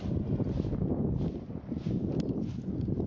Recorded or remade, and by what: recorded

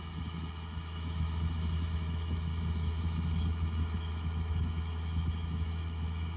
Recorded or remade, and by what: remade, autoencoder, DAC-VAE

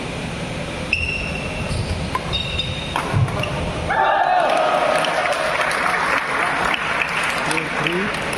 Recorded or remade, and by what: recorded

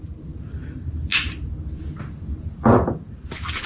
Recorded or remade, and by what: recorded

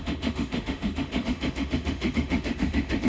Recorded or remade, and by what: remade, autoencoder, DAC-VAE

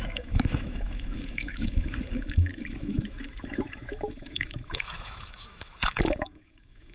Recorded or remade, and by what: remade, autoencoder, DAC-VAE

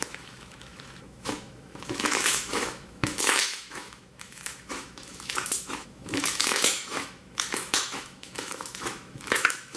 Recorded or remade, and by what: remade, autoencoder, DAC-VAE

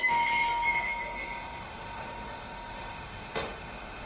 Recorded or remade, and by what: remade, autoencoder, DAC-VAE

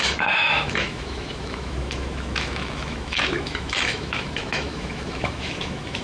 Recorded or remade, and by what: remade, autoencoder, DAC-VAE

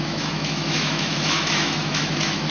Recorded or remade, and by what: remade, autoencoder, DAC-VAE